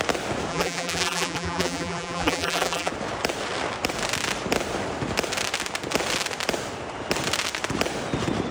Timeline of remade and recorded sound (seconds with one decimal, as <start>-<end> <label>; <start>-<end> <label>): 0.0-0.5 recorded; 0.5-2.9 remade; 2.9-8.5 recorded